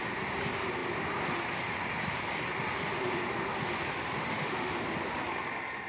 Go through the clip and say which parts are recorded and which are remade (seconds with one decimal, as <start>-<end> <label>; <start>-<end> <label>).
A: 0.0-4.2 recorded; 4.2-4.7 remade; 4.7-5.9 recorded